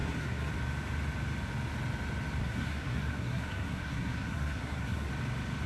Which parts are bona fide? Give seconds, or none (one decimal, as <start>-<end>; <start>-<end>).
0.5-2.4; 5.1-5.7